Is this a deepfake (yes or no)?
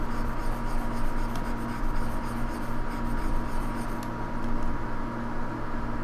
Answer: no